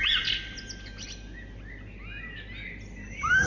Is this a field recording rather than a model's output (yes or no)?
yes